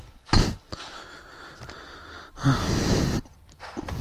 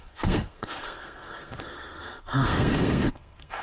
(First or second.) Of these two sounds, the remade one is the second